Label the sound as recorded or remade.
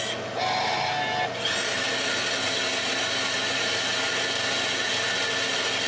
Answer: recorded